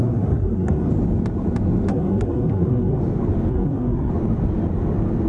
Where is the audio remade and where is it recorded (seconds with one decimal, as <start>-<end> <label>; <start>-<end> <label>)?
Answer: 0.0-0.9 remade; 0.9-1.9 recorded; 1.9-3.0 remade; 3.0-3.5 recorded; 3.5-4.1 remade; 4.1-5.3 recorded